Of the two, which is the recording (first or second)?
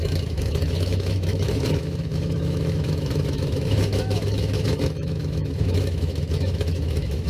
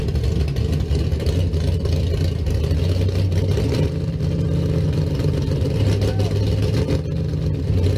second